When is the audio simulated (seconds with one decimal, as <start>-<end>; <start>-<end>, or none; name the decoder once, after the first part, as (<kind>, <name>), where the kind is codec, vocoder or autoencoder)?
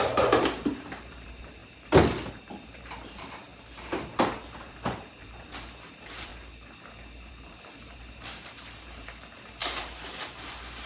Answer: 0.0-1.6 (vocoder, BigVGAN v2); 2.3-3.5; 4.5-6.3; 7.3-10.9